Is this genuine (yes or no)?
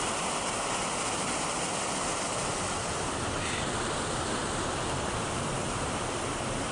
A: no